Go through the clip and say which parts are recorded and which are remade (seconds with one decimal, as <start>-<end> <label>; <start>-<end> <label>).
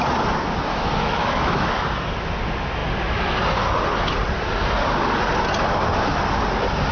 0.0-0.7 recorded; 0.7-1.7 remade; 1.7-6.9 recorded